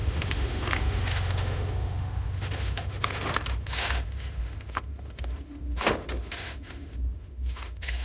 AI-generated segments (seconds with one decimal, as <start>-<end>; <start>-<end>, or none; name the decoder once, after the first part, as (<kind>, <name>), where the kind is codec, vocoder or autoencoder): 0.0-8.0 (autoencoder, DAC-VAE)